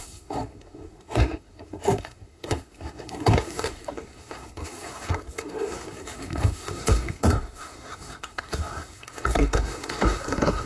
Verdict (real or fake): fake